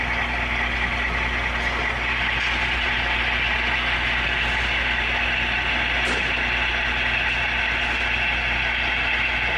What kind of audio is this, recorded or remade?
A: recorded